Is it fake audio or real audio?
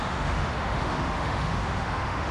fake